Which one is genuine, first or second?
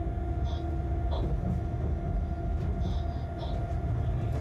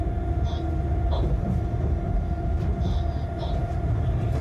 first